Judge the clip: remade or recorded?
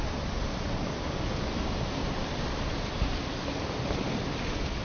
recorded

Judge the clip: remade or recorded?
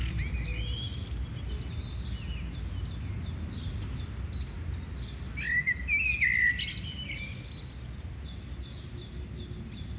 recorded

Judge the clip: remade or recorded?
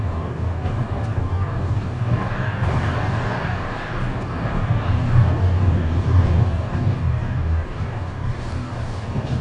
remade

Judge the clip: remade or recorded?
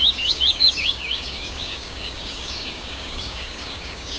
remade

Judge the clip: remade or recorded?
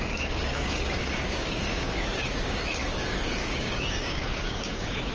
remade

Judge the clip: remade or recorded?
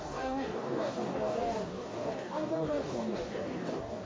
remade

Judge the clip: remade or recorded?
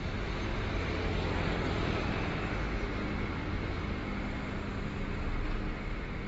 recorded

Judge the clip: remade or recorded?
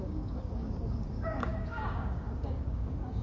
remade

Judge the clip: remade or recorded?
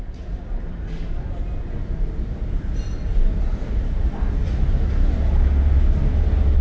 recorded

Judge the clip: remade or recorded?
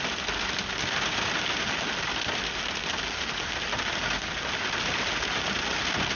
recorded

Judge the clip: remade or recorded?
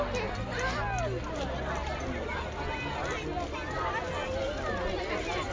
recorded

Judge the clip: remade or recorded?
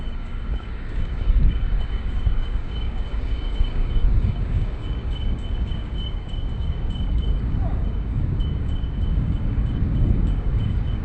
remade